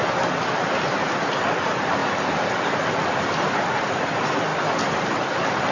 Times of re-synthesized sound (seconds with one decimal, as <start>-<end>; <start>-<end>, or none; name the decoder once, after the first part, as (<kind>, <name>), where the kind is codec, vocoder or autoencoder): none